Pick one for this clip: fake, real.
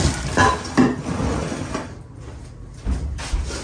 real